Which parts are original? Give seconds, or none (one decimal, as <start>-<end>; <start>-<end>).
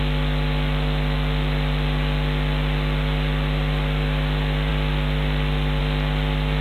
0.0-6.6